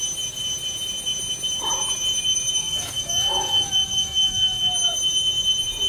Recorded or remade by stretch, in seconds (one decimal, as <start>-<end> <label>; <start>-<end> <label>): 0.0-2.6 recorded; 2.6-4.7 remade; 4.7-5.9 recorded